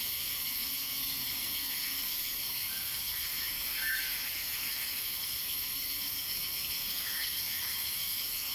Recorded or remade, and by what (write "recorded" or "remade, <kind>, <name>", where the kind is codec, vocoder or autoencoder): remade, codec, SNAC